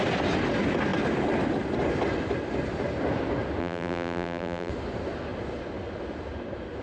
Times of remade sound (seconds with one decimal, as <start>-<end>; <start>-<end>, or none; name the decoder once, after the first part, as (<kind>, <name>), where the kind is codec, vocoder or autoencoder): 3.6-4.7 (vocoder, BigVGAN v2)